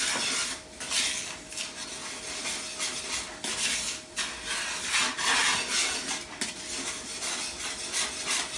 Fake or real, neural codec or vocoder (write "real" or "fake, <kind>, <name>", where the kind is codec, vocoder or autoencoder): real